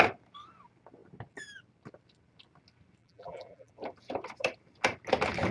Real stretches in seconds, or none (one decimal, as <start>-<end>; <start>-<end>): 0.0-3.0; 3.7-5.5